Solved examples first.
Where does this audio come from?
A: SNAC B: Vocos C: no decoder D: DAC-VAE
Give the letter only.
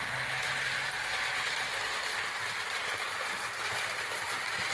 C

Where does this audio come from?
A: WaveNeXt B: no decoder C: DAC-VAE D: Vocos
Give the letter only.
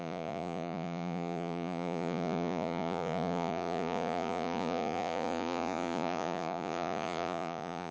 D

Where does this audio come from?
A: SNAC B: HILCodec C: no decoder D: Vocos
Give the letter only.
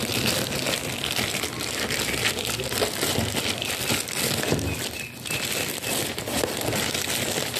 C